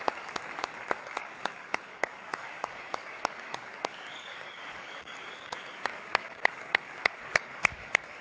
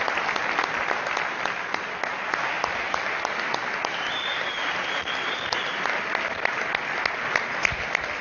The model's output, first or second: first